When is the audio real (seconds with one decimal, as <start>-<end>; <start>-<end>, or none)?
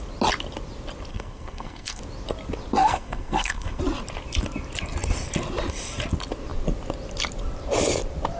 0.0-1.1; 2.0-2.8; 3.8-8.4